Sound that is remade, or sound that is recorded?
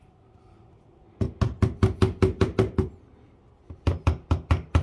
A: recorded